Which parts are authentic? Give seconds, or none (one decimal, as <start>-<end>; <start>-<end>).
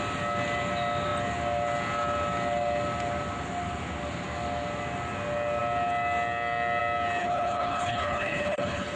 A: 0.0-7.2